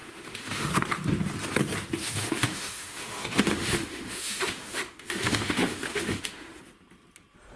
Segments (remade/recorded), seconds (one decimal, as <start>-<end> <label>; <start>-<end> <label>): 0.0-0.7 remade; 0.7-2.0 recorded; 2.0-6.6 remade; 6.6-7.6 recorded